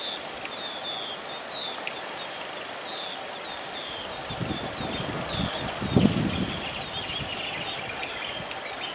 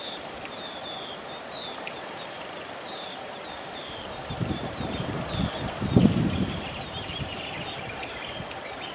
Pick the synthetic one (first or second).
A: second